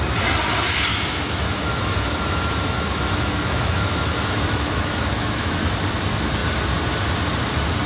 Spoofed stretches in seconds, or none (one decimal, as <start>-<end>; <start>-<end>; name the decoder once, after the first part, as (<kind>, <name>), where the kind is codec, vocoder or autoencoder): 0.9-5.6 (autoencoder, DAC-VAE)